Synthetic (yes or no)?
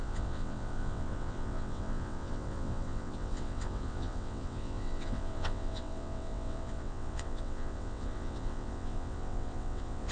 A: yes